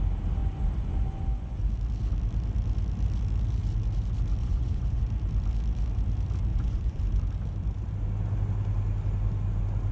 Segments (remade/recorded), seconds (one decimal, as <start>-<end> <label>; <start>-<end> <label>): 0.0-0.4 recorded; 0.4-1.7 remade; 1.7-4.4 recorded; 4.4-5.0 remade; 5.0-6.5 recorded; 6.5-7.0 remade; 7.0-9.9 recorded